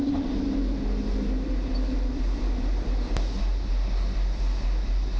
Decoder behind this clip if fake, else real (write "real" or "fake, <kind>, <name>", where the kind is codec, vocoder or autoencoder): real